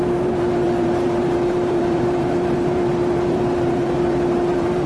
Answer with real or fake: fake